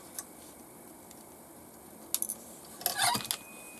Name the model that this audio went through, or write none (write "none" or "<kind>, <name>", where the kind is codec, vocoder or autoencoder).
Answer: none